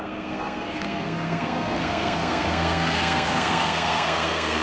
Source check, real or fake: fake